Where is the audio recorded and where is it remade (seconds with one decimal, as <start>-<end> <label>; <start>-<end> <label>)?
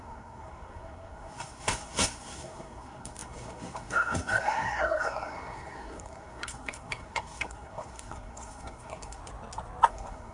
0.0-9.2 remade; 9.2-9.9 recorded; 9.9-10.3 remade